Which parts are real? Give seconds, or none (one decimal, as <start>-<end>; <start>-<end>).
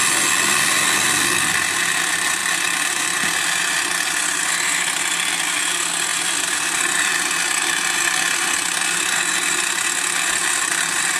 0.0-2.4; 3.3-6.1; 7.1-10.4